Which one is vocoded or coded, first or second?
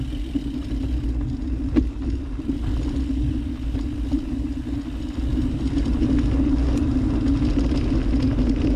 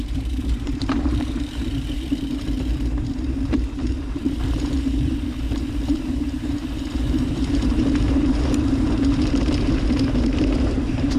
second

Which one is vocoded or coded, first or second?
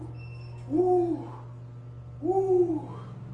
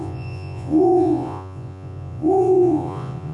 second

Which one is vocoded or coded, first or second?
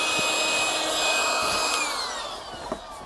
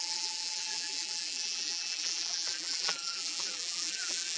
second